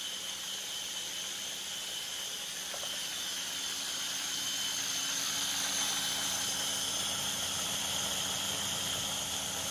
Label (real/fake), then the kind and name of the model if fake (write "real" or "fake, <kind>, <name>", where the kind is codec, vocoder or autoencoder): fake, vocoder, BigVGAN v2